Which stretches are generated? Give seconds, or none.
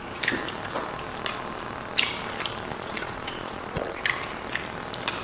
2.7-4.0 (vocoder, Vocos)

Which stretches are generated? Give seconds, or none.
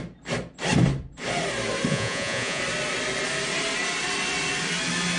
1.9-2.6 (vocoder, Vocos)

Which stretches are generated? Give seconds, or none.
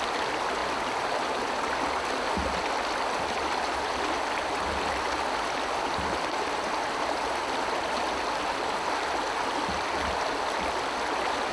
none